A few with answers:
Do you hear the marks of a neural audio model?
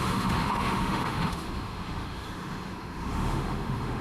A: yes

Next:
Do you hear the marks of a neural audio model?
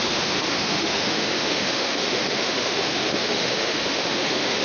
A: yes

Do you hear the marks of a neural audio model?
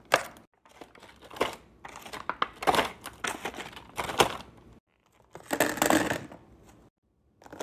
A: no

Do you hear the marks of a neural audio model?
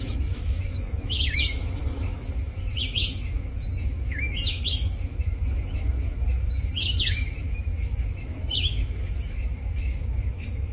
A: yes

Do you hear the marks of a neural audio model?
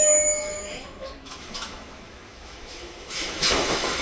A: yes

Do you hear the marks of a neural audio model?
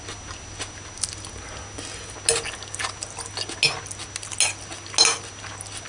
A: no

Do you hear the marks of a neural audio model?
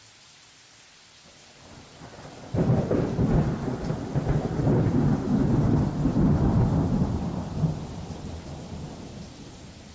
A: no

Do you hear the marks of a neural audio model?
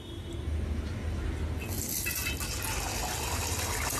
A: no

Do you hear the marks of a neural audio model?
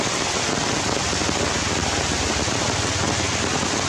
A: no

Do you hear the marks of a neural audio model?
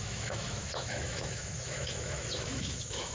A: yes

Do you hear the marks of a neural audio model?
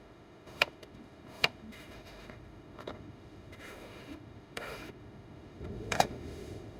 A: yes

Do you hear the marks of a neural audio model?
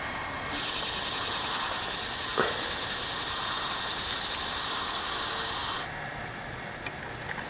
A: no